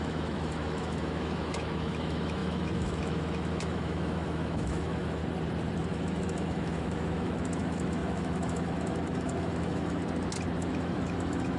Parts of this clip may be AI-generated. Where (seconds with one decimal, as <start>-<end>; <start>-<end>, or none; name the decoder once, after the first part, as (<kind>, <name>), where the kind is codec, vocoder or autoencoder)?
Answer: 0.0-5.2 (autoencoder, DAC-VAE); 5.9-10.0; 10.6-11.6